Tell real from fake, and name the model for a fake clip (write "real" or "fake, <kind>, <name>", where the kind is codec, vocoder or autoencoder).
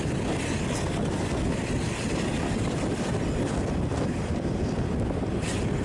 real